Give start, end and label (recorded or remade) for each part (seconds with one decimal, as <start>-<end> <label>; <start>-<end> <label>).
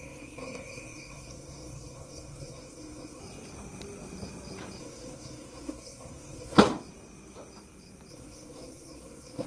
0.0-3.2 remade; 3.2-4.8 recorded; 4.8-6.7 remade; 6.7-8.1 recorded; 8.1-9.5 remade